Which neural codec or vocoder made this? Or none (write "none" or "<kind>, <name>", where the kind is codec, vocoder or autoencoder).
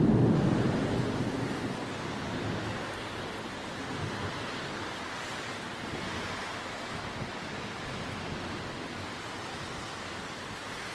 none